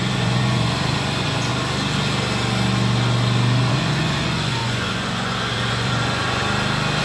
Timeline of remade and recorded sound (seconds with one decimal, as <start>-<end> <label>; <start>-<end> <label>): 0.0-1.5 remade; 1.5-3.7 recorded; 3.7-6.4 remade; 6.4-7.0 recorded